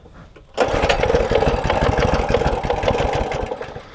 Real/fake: real